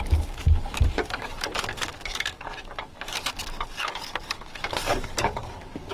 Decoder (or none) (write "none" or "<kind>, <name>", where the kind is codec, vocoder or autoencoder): codec, DAC